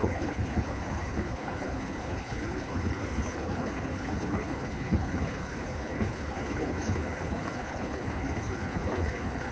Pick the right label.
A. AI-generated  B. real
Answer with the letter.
A